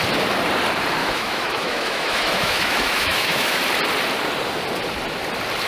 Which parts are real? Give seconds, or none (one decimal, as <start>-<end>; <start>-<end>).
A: 0.0-1.0; 3.6-5.7